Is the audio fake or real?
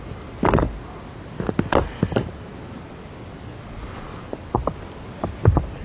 real